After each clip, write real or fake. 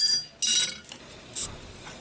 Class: real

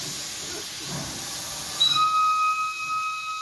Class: real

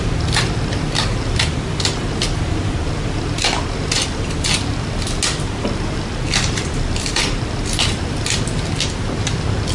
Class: real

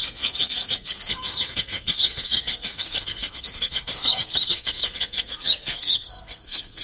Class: fake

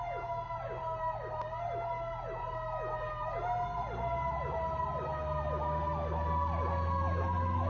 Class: real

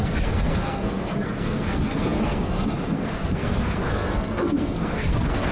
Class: fake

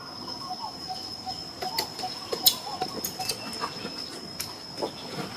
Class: real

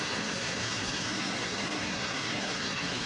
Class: fake